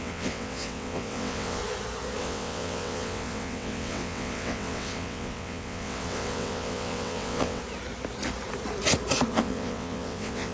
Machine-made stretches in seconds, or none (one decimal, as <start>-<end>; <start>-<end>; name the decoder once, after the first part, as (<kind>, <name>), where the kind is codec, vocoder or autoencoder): 0.0-1.6 (vocoder, WaveNeXt); 2.2-7.6; 9.3-10.5